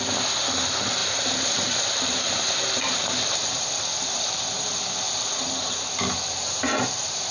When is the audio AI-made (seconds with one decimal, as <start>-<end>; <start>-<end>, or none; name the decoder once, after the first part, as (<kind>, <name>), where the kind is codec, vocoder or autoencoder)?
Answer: 1.0-3.8 (vocoder, BigVGAN v2)